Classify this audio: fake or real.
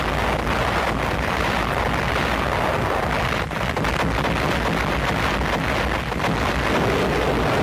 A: real